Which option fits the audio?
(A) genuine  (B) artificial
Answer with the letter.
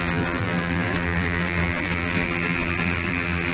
B